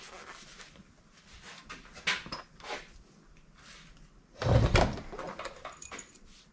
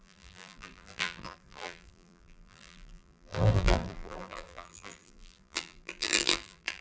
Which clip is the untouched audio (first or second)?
first